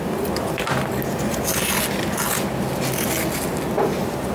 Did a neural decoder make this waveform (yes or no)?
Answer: no